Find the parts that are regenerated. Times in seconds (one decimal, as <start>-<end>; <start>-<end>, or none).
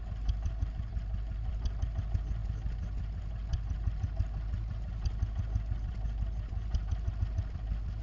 none